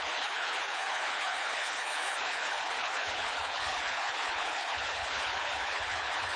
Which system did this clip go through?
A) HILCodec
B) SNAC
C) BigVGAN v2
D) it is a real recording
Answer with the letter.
A